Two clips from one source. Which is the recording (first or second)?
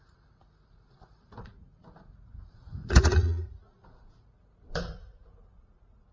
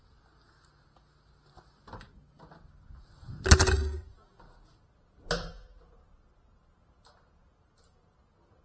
second